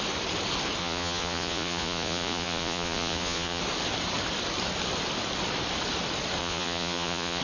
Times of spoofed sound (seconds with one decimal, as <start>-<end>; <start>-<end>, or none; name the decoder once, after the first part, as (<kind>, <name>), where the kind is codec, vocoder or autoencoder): 0.8-3.6 (vocoder, Vocos); 6.4-7.4